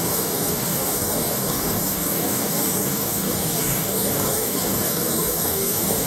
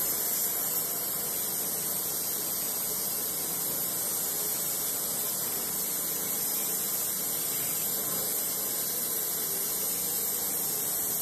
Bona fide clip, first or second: second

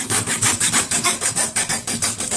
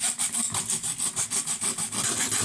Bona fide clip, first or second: second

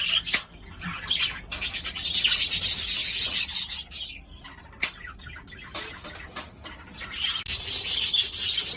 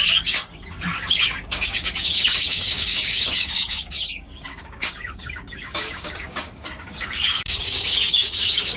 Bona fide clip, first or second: first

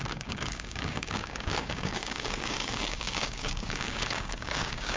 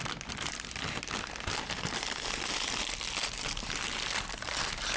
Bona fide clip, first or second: second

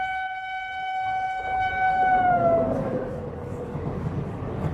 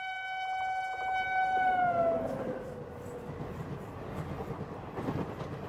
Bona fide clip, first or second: second